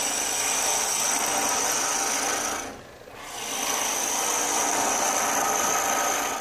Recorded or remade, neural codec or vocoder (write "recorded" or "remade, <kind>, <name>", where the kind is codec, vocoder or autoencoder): recorded